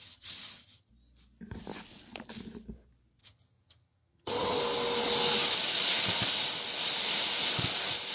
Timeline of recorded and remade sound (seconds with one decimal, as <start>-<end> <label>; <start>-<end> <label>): 0.0-0.9 remade; 0.9-3.2 recorded; 3.2-4.6 remade; 4.6-8.1 recorded